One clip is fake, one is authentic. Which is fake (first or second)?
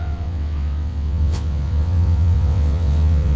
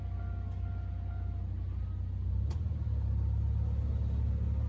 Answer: first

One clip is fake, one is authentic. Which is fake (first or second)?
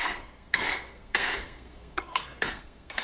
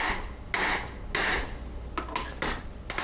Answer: first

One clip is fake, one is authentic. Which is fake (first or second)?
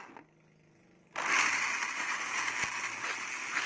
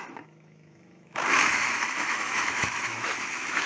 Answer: second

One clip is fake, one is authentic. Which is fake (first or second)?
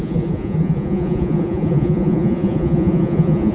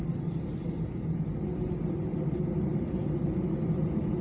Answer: first